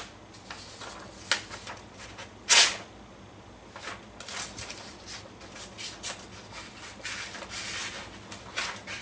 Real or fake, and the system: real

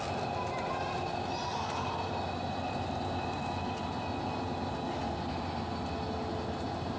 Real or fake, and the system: real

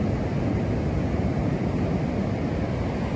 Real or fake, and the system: real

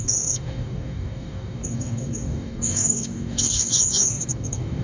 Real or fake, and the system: fake, codec, DAC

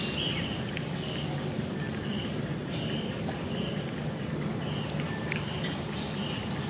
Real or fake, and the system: real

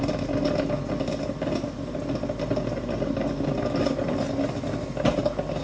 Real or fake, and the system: real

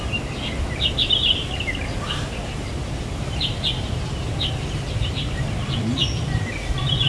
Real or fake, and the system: real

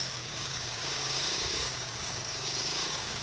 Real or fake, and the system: fake, codec, DAC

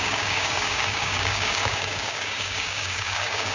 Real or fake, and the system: fake, codec, DAC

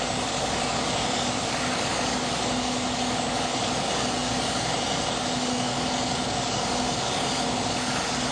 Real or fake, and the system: fake, codec, DAC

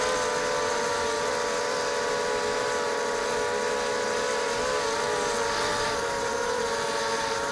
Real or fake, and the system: real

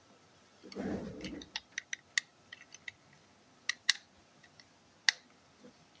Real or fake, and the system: real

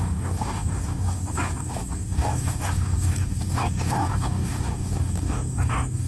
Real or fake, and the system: fake, codec, DAC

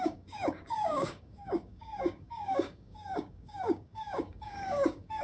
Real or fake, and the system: fake, codec, DAC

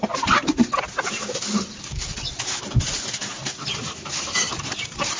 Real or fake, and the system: real